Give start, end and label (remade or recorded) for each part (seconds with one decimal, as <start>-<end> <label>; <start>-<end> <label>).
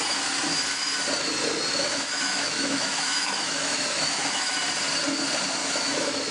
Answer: 0.0-1.7 recorded; 1.7-4.5 remade; 4.5-5.6 recorded; 5.6-6.3 remade